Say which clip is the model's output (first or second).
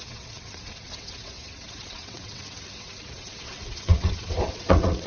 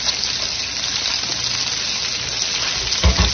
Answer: first